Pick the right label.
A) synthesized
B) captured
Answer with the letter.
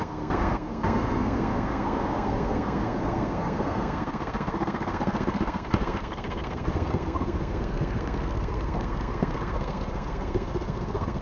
A